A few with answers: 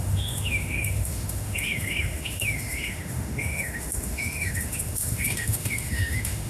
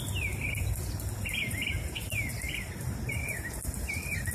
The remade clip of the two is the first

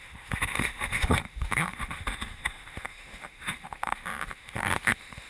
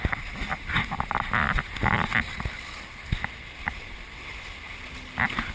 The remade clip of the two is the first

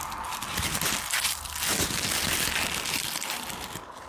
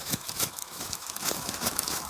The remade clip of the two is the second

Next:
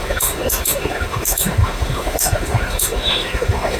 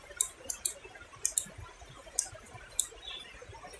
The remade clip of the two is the first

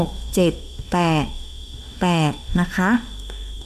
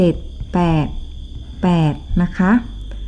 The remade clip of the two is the first